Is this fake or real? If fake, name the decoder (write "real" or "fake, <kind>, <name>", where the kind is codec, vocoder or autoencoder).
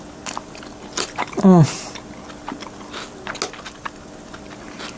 real